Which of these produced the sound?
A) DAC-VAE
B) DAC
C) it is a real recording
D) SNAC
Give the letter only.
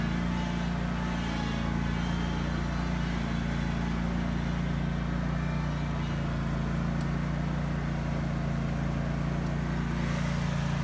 C